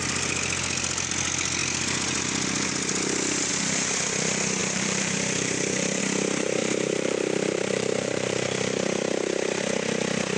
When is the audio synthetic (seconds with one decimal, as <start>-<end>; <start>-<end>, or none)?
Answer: 4.6-6.0; 6.6-9.6